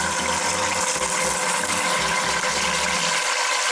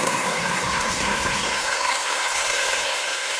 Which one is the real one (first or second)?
first